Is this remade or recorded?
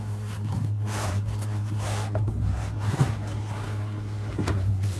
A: remade